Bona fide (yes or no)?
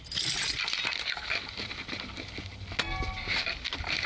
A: yes